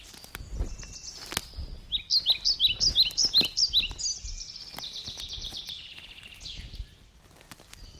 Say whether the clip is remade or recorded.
recorded